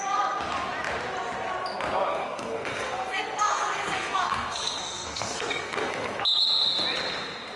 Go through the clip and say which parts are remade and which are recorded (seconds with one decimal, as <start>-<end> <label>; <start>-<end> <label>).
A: 0.0-2.1 recorded; 2.1-6.2 remade; 6.2-7.6 recorded